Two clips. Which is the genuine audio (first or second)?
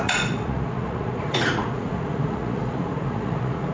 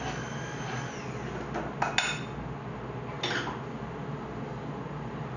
second